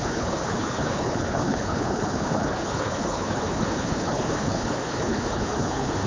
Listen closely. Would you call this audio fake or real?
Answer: fake